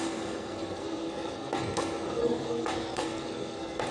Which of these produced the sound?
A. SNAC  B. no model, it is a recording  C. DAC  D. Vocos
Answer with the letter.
A